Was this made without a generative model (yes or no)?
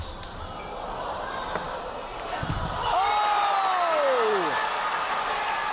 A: yes